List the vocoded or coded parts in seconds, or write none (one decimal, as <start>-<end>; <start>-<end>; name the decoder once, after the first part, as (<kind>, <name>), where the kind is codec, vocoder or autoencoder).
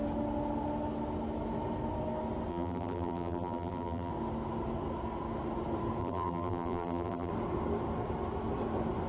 2.5-4.1 (vocoder, BigVGAN v2); 6.0-7.3